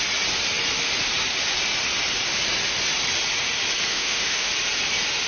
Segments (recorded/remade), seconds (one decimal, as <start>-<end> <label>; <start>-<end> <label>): 0.0-3.9 recorded; 3.9-4.5 remade; 4.5-5.3 recorded